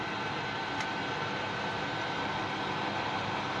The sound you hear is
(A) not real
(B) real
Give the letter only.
B